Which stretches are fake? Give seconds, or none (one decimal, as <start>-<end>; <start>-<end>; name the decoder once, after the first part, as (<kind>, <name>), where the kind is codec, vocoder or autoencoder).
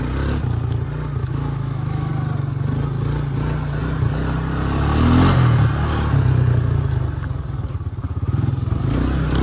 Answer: 1.2-2.1 (autoencoder, DAC-VAE)